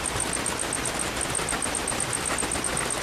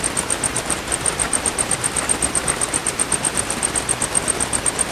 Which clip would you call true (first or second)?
first